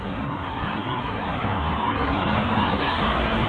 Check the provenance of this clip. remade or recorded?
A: remade